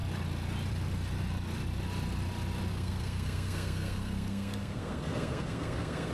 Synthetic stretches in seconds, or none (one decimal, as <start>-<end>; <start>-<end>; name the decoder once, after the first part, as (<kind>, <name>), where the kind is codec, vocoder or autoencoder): 2.7-6.1 (codec, SNAC)